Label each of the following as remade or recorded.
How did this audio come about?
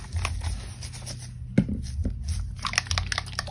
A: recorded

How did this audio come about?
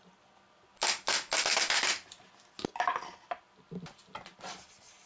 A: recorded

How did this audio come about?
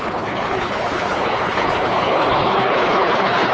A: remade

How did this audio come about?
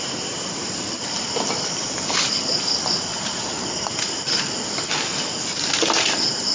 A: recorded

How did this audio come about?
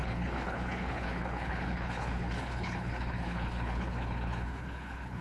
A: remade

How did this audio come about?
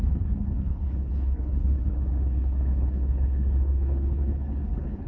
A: remade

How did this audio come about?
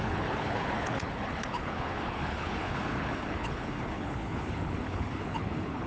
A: remade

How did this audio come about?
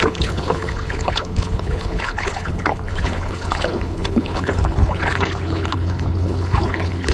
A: remade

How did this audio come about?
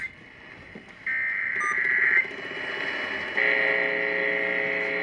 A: recorded